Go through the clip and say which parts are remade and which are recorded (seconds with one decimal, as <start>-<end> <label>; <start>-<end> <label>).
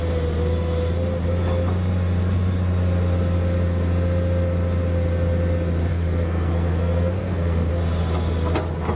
0.0-5.9 recorded; 5.9-7.7 remade; 7.7-9.0 recorded